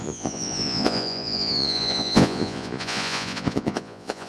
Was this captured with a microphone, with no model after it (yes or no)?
no